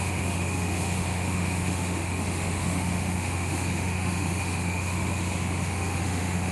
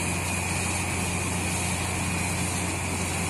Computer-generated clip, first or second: first